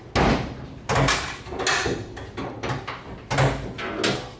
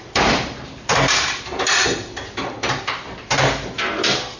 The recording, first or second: first